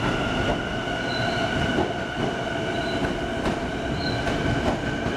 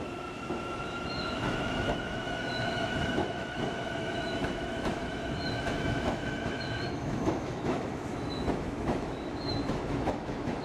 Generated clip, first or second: second